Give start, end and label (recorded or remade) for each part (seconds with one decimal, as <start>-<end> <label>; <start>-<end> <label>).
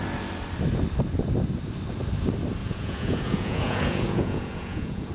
0.0-2.6 recorded; 2.6-5.1 remade